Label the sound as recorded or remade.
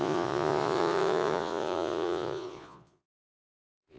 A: remade